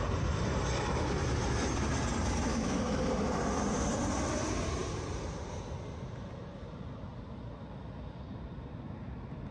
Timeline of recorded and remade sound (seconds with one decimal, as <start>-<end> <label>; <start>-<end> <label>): 0.0-2.5 recorded; 2.5-3.0 remade; 3.0-9.5 recorded